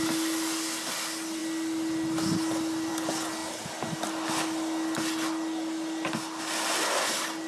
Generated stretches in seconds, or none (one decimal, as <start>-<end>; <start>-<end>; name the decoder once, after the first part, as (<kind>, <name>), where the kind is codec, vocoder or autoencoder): none